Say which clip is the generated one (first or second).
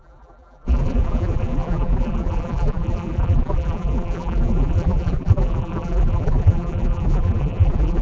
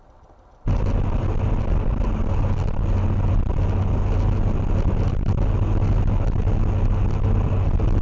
first